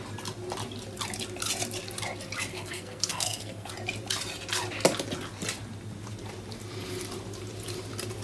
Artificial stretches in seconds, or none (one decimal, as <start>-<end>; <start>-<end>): 2.5-3.7